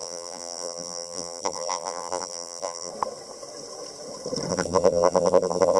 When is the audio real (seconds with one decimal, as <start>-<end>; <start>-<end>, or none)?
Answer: 2.9-4.5